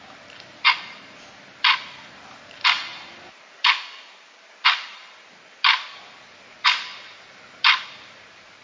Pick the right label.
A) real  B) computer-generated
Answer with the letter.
A